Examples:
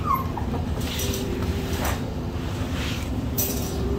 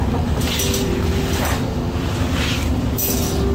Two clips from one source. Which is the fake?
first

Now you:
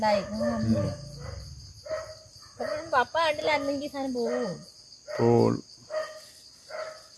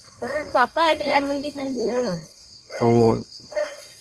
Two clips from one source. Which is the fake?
second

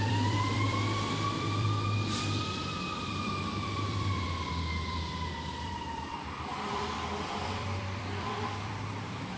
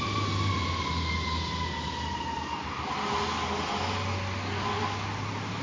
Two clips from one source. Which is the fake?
first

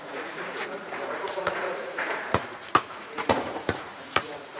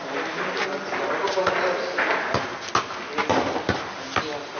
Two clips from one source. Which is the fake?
first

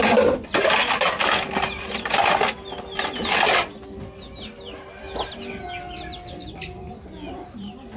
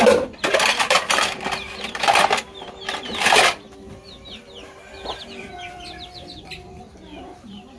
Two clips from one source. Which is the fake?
second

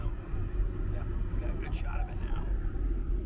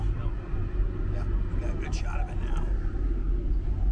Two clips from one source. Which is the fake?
first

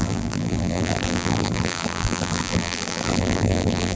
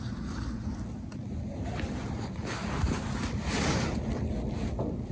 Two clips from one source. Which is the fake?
first